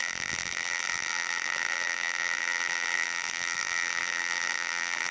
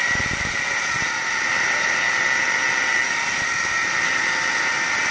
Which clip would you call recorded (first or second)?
second